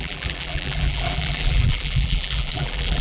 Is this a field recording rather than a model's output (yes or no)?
no